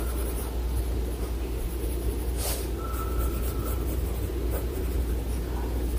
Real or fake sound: fake